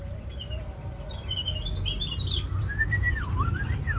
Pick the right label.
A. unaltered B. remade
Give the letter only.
B